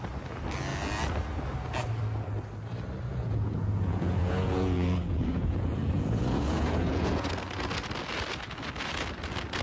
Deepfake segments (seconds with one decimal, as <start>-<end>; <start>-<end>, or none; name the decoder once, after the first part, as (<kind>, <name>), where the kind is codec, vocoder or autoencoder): 3.1-7.3 (vocoder, Vocos)